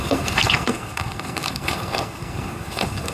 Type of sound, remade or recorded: remade